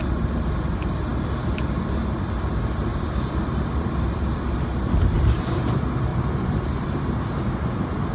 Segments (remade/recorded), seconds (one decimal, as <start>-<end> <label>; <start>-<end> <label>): 0.0-2.9 recorded; 2.9-4.2 remade; 4.2-6.1 recorded; 6.1-7.0 remade; 7.0-8.1 recorded